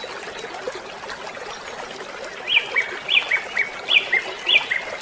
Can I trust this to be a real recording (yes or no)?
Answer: yes